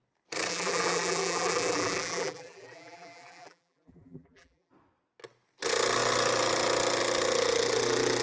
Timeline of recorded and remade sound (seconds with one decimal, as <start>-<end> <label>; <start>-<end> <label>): 0.0-0.5 recorded; 0.5-4.7 remade; 4.7-8.2 recorded